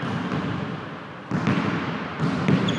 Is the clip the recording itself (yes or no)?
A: yes